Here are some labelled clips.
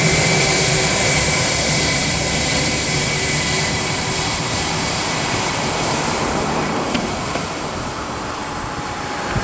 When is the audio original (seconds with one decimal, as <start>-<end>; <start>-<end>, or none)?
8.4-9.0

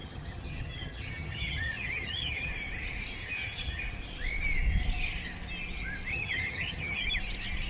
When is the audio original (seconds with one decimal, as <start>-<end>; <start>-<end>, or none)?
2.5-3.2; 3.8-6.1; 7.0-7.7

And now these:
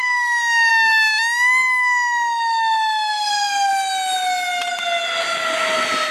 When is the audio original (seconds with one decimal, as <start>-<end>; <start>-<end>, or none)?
0.7-3.1; 3.7-6.1

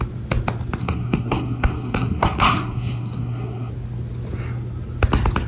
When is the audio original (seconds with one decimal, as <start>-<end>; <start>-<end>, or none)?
0.0-0.8; 3.7-5.5

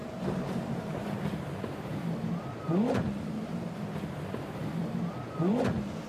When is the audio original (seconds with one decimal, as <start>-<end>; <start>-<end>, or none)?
3.7-4.8; 5.5-6.1

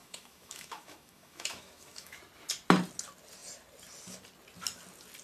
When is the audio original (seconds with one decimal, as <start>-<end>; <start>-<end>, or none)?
2.2-5.2

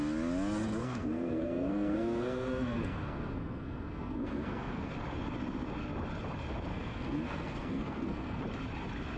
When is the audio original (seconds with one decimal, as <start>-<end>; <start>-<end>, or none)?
0.0-0.8; 4.9-6.7; 8.4-9.2

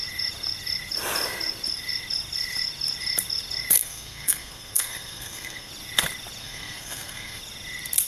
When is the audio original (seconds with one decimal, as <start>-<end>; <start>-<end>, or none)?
0.0-3.8; 5.7-6.4; 7.4-8.1